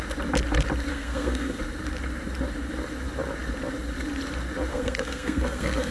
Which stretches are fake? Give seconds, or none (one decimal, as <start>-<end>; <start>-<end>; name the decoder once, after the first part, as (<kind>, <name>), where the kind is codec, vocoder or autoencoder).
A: 0.9-1.6 (codec, SNAC); 4.7-5.9

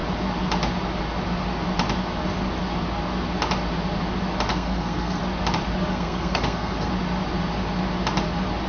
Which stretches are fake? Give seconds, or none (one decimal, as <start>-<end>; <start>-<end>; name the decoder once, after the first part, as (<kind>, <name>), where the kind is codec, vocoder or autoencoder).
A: 4.5-5.2 (codec, SNAC); 5.9-6.9

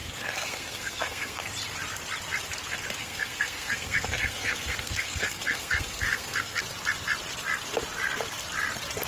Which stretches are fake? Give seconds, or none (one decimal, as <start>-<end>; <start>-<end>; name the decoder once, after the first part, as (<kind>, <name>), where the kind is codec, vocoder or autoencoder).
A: 0.0-1.5 (codec, SNAC); 3.0-6.6